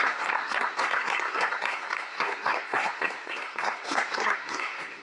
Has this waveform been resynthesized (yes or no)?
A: yes